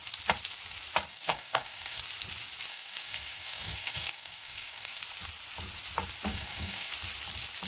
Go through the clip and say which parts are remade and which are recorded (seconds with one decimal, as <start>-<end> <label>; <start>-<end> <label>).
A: 0.0-1.1 recorded; 1.1-2.0 remade; 2.0-2.7 recorded; 2.7-5.0 remade; 5.0-6.3 recorded; 6.3-6.9 remade; 6.9-7.7 recorded